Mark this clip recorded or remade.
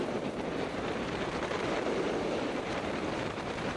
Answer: remade